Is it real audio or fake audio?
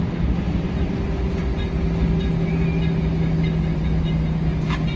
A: real